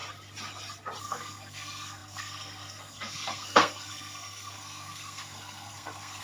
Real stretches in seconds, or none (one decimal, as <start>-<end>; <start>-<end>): 0.0-1.0